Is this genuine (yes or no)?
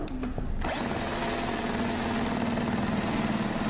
yes